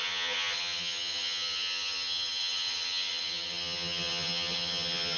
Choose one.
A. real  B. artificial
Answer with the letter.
B